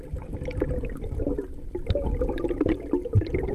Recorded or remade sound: recorded